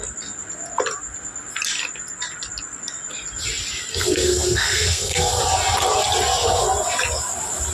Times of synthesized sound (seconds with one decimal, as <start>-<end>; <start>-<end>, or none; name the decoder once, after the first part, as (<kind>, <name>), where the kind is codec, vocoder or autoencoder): 3.9-5.4 (codec, SNAC)